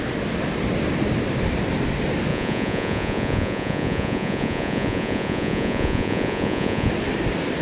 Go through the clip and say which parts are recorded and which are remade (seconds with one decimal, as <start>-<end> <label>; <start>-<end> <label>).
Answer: 0.0-2.3 recorded; 2.3-6.9 remade; 6.9-7.6 recorded